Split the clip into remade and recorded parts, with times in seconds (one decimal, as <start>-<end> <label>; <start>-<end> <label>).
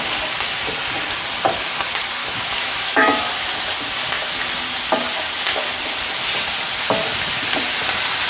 0.0-2.2 recorded; 2.2-3.3 remade; 3.3-8.3 recorded